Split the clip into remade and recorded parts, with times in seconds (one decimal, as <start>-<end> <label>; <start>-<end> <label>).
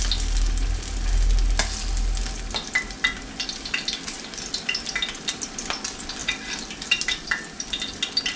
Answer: 0.0-8.4 recorded